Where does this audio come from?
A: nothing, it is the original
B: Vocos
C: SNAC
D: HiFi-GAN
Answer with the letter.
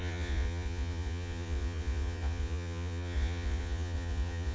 B